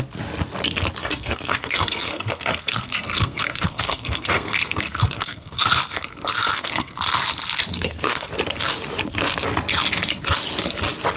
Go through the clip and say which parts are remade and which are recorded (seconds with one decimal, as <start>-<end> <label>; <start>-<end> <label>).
0.0-1.0 recorded; 1.0-5.6 remade; 5.6-6.4 recorded; 6.4-7.0 remade; 7.0-7.7 recorded; 7.7-8.3 remade; 8.3-11.2 recorded